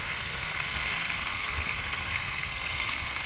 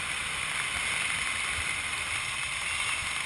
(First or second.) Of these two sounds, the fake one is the first